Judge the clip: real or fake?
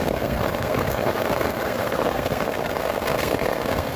fake